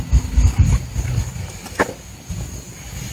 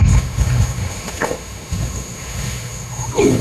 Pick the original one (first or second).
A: first